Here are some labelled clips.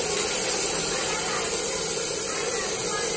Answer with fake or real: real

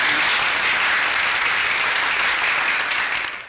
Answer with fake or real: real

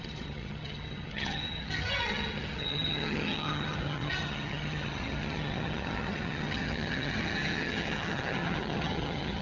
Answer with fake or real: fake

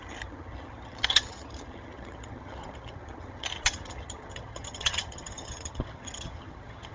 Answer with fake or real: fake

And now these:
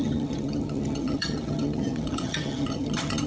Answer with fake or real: fake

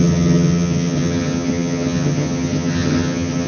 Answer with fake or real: fake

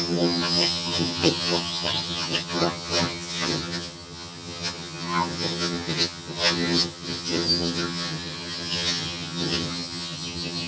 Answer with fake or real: fake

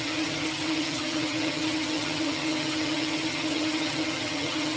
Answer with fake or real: fake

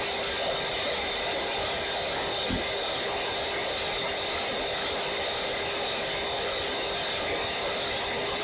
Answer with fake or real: real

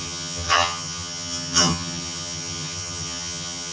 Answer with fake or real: fake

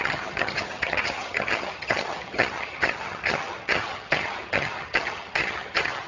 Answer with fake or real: fake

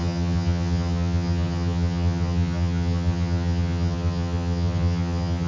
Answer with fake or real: fake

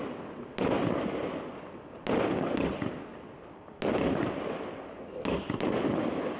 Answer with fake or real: real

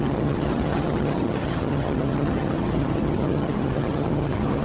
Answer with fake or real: fake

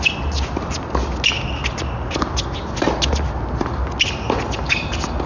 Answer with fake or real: real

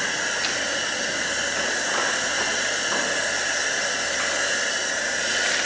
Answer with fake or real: real